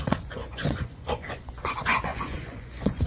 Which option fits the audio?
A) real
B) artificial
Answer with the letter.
B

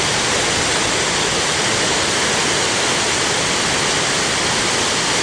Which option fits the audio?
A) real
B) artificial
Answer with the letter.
A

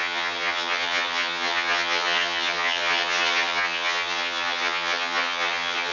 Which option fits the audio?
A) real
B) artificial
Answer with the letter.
B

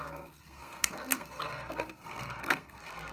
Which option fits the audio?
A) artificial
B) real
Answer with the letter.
A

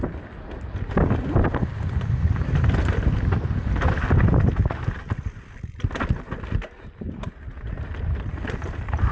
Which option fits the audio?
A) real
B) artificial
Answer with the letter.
A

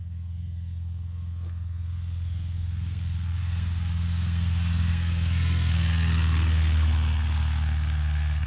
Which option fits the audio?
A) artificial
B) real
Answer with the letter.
A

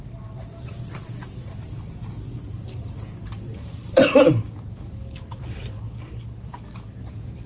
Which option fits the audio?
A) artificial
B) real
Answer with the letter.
B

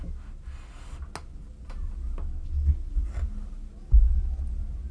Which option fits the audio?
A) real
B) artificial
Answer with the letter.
A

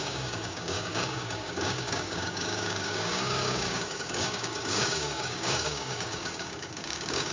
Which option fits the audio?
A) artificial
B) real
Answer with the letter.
A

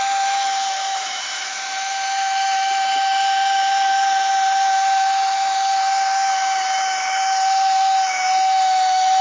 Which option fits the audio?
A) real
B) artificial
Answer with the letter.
B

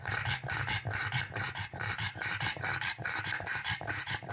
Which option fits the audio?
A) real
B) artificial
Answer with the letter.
A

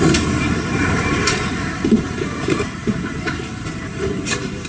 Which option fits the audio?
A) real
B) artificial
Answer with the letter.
B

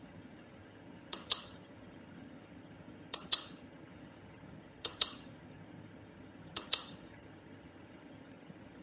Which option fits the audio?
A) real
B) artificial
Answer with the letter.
B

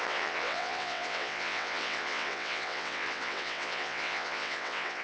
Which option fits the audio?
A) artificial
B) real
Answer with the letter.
A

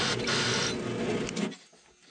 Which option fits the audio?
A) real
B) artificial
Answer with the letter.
A